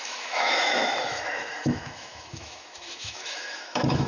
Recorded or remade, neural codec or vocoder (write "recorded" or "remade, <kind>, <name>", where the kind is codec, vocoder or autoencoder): remade, autoencoder, DAC-VAE